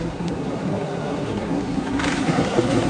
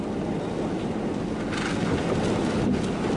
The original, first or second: second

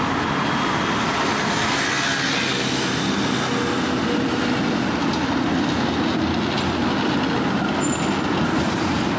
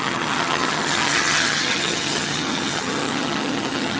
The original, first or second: first